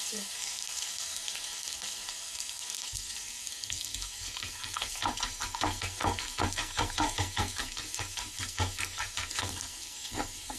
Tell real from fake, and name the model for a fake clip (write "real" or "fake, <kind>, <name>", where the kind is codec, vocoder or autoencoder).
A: fake, codec, SNAC